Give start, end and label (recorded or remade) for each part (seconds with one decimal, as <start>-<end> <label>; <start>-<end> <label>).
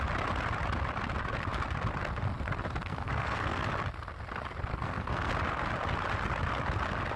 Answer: 0.0-2.8 recorded; 2.8-3.7 remade; 3.7-4.7 recorded; 4.7-5.3 remade; 5.3-7.2 recorded